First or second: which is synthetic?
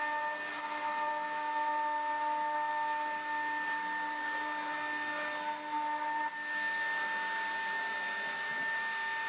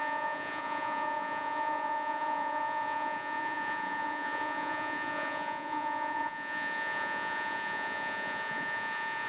second